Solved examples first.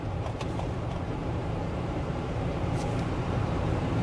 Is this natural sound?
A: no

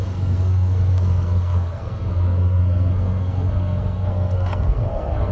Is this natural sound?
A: no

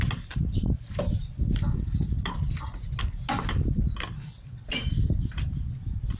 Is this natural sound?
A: yes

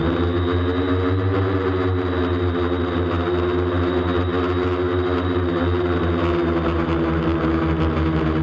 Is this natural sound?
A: yes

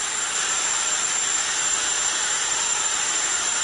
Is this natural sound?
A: no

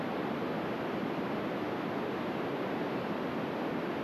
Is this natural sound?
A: yes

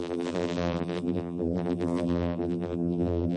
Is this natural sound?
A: no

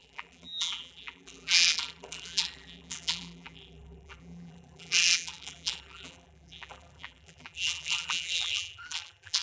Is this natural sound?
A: no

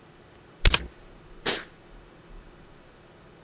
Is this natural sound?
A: yes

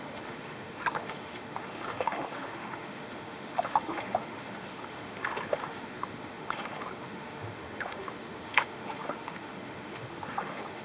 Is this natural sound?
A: no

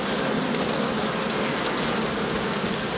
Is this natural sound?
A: yes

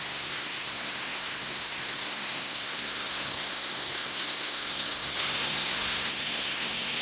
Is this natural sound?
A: no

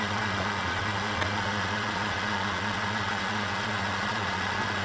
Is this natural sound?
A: no